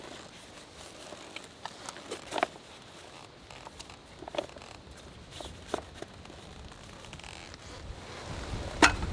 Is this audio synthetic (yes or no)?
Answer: no